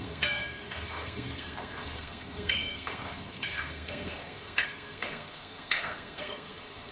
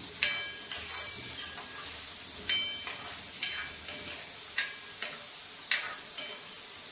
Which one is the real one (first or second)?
second